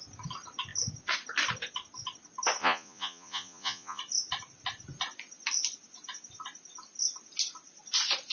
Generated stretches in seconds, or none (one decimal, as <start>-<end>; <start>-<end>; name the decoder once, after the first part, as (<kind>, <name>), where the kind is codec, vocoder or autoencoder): 2.6-4.0 (vocoder, Vocos)